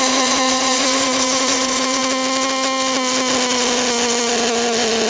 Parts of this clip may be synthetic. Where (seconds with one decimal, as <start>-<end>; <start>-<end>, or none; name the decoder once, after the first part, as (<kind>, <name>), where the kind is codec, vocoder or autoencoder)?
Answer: 0.0-2.0 (vocoder, Vocos)